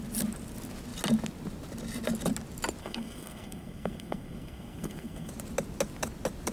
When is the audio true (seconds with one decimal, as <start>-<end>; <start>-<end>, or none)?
0.0-2.8; 5.3-6.5